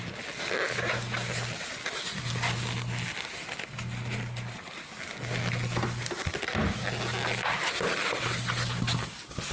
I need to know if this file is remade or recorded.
recorded